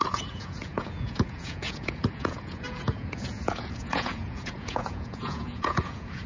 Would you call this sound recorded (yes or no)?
no